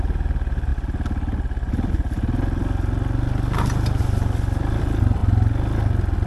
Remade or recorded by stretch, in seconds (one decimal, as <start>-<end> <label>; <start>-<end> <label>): 0.0-0.7 remade; 0.7-4.0 recorded; 4.0-5.2 remade; 5.2-6.3 recorded